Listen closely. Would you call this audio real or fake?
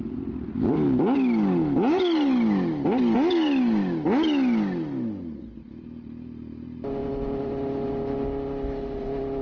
real